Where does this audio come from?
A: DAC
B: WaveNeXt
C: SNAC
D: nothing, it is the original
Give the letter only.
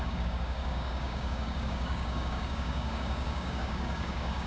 A